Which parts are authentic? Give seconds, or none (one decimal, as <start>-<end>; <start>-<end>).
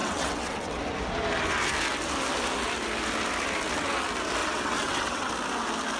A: 0.8-4.4; 5.3-6.0